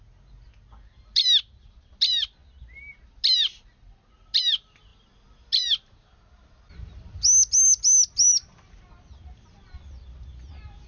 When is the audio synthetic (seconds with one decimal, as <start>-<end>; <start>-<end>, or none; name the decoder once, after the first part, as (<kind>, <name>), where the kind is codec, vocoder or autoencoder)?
none